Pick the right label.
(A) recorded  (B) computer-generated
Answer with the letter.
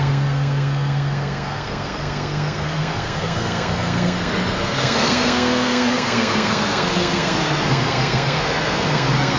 B